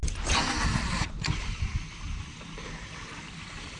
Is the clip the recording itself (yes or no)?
yes